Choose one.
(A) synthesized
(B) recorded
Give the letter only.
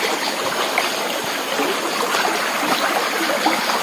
B